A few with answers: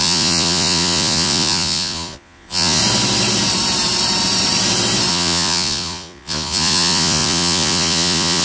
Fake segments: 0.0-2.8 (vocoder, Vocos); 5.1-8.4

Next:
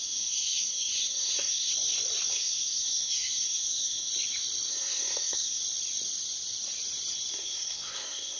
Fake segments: 0.0-1.7 (codec, SNAC); 2.3-4.1; 4.7-5.6; 7.3-8.4

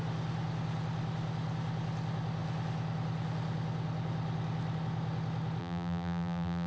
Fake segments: 5.6-6.7 (vocoder, BigVGAN v2)

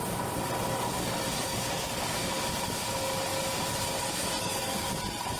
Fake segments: 0.8-2.3 (codec, SNAC); 4.4-4.9

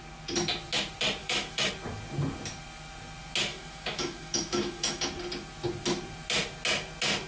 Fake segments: 1.2-1.7 (autoencoder, DAC-VAE); 3.5-5.0

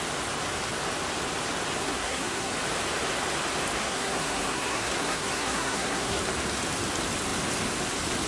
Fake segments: 1.8-2.5 (codec, SNAC); 3.8-6.2

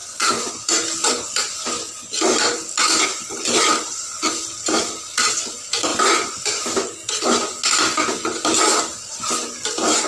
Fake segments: 0.0-0.5 (vocoder, Vocos); 5.9-6.6